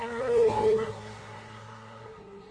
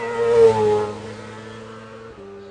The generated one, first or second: first